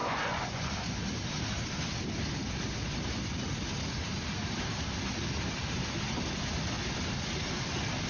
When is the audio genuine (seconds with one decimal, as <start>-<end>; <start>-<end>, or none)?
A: 0.7-8.1